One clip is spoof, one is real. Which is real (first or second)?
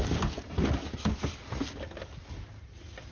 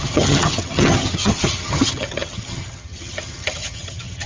first